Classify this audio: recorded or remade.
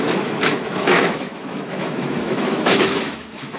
remade